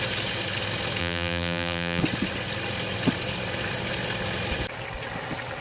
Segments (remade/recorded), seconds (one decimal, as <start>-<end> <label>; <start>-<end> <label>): 0.0-1.0 recorded; 1.0-2.0 remade; 2.0-5.6 recorded